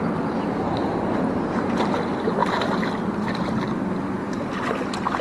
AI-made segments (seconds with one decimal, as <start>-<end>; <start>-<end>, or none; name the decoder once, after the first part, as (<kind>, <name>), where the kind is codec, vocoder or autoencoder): none